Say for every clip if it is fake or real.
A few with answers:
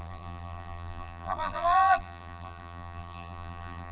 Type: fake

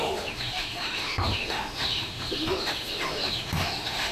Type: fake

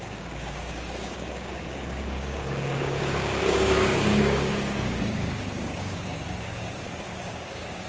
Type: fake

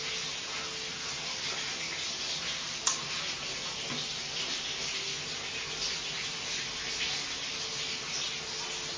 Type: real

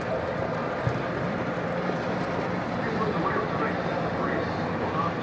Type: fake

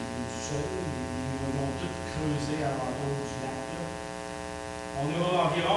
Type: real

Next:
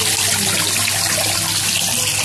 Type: real